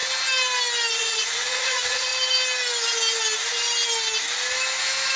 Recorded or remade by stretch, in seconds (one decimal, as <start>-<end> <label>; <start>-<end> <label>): 0.0-0.9 recorded; 0.9-2.1 remade; 2.1-5.2 recorded